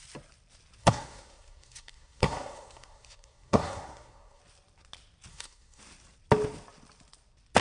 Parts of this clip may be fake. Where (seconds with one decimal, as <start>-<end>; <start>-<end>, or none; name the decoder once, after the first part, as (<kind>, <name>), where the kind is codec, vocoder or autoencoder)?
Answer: 0.8-4.4 (codec, SNAC); 5.3-5.8